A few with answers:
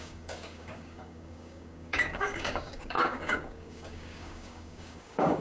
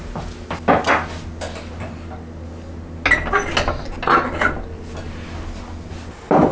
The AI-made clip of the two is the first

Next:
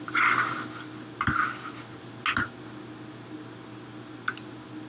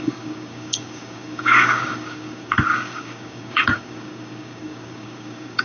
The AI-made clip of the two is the second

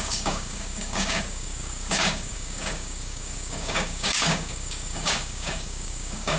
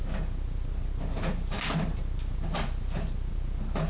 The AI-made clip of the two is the first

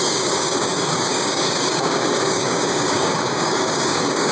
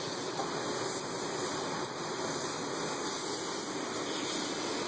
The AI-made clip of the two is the first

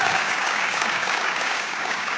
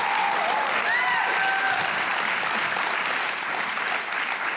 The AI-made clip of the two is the first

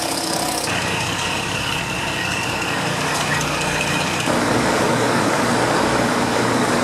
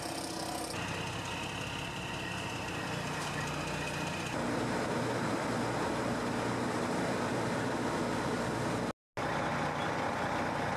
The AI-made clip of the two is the first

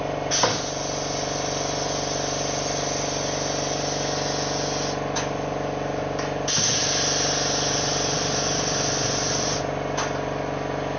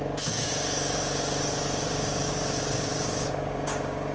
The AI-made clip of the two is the second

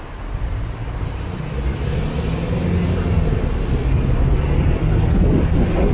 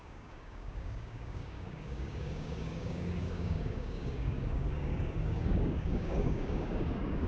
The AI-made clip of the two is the second